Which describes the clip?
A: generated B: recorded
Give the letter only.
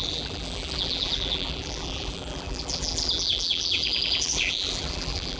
A